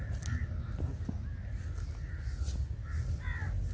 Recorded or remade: recorded